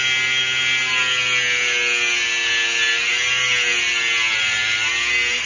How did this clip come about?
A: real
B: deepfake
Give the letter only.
A